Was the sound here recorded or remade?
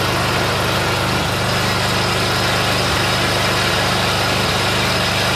recorded